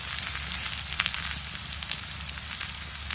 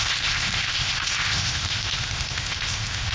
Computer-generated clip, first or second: second